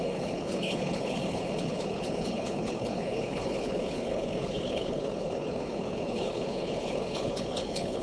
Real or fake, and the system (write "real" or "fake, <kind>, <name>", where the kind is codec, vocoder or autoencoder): fake, codec, HILCodec